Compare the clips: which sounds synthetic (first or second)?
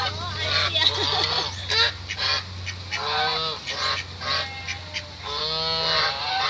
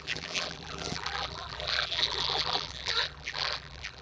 second